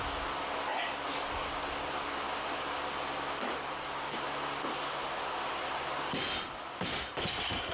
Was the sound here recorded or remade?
recorded